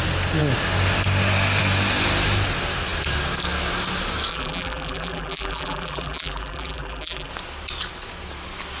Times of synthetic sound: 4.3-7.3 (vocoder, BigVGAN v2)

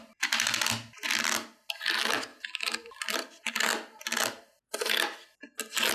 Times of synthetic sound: none